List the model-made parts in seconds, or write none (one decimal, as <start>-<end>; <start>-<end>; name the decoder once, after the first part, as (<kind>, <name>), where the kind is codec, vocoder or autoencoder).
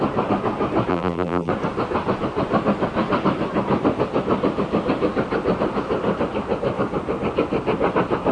0.9-1.5 (vocoder, BigVGAN v2)